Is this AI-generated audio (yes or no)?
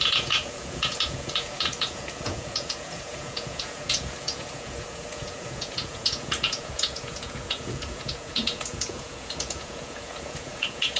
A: yes